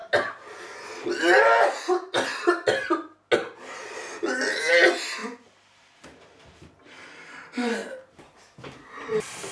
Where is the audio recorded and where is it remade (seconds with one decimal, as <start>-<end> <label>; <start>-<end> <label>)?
0.0-9.5 recorded